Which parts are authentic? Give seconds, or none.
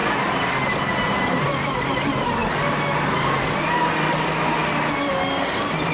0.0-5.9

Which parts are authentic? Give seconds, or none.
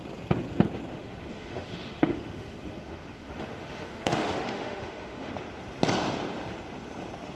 0.0-0.9; 5.3-7.4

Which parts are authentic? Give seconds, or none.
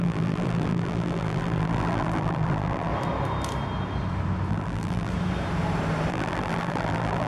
2.9-4.5; 5.1-6.1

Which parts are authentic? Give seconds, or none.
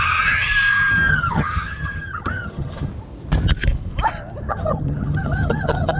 0.5-1.1; 2.9-4.5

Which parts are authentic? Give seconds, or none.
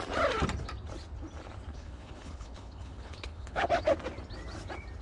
0.0-1.7; 3.7-5.0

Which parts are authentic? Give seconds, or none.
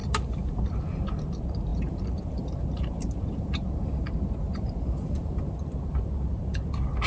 0.0-1.7; 5.4-7.1